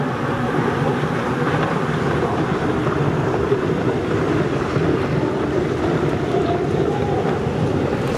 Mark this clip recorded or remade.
remade